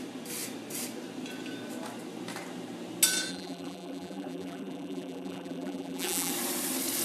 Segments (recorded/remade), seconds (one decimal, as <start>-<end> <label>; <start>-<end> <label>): 0.0-3.3 recorded; 3.3-6.3 remade; 6.3-7.0 recorded